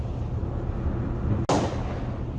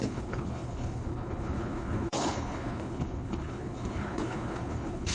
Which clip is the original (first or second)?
first